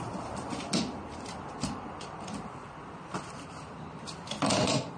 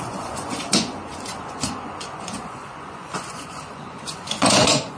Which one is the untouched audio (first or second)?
first